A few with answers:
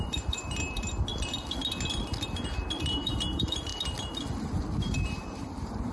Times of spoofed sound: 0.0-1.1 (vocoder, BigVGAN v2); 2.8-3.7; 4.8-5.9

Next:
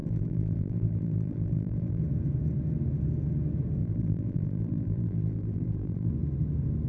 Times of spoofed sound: 0.0-2.0 (vocoder, BigVGAN v2); 3.8-6.1

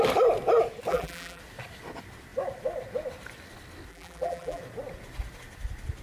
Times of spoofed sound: 0.9-1.4 (vocoder, BigVGAN v2); 3.9-4.6

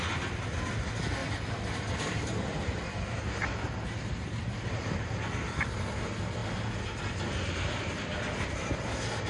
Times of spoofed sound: 1.2-1.9 (vocoder, BigVGAN v2)

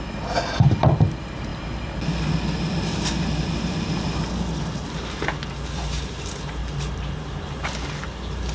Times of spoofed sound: 6.6-7.7 (vocoder, BigVGAN v2)

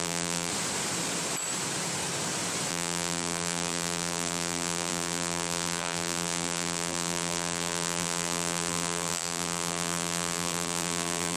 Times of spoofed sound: 0.0-0.5 (vocoder, BigVGAN v2); 2.7-11.4

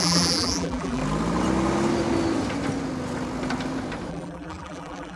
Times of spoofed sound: 0.0-1.0 (vocoder, BigVGAN v2); 4.1-5.2

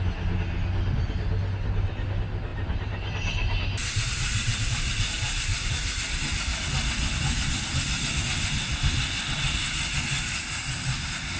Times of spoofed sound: 2.5-5.7 (vocoder, BigVGAN v2)